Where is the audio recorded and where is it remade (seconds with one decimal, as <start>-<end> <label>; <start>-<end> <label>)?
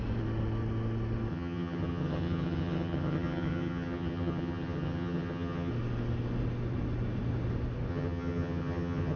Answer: 0.0-1.3 recorded; 1.3-5.7 remade; 5.7-7.9 recorded; 7.9-9.2 remade